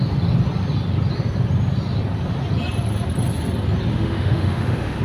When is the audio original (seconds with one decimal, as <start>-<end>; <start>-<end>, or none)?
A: 0.0-3.9